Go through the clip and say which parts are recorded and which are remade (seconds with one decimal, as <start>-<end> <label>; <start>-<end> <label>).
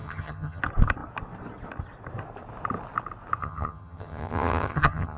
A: 0.0-0.6 remade; 0.6-3.4 recorded; 3.4-5.2 remade